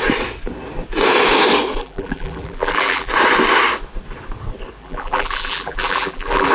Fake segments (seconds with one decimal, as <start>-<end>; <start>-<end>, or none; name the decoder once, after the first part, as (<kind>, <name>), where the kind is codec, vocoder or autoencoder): 1.8-3.1 (vocoder, BigVGAN v2); 4.8-6.5